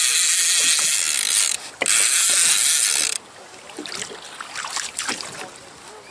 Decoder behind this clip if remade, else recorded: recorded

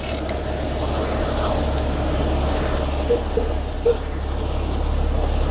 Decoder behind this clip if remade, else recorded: recorded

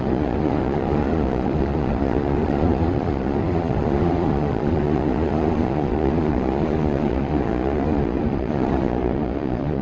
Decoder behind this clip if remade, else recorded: remade, vocoder, Vocos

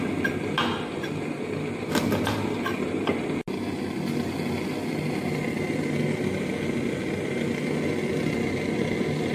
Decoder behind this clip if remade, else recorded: recorded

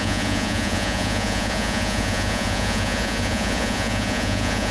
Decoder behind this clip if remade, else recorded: remade, vocoder, Vocos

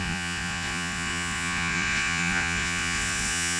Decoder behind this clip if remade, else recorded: remade, vocoder, Vocos